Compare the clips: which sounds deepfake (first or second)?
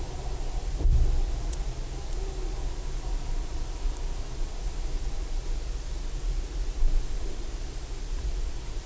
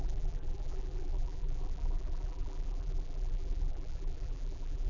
second